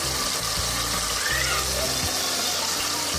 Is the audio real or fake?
real